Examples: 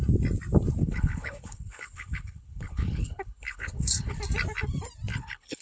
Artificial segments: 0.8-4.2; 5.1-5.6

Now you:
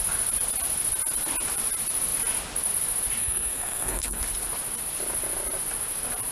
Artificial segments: 3.2-4.2

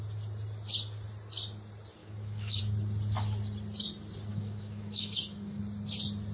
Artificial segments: 2.0-2.6; 4.3-5.6

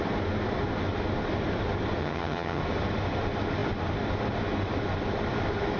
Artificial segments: 2.0-2.6